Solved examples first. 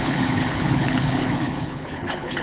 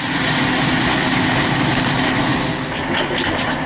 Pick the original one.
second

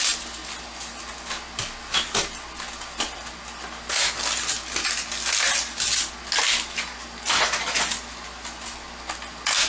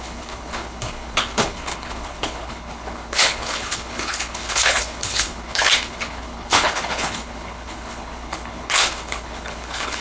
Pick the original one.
first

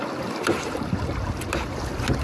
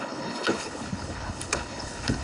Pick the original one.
first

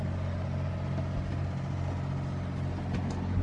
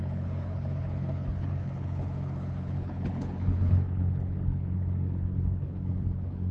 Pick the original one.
first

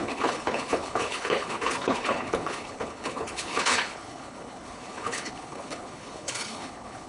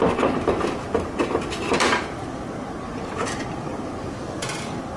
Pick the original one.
second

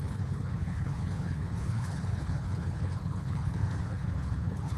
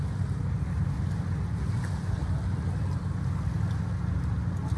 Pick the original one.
second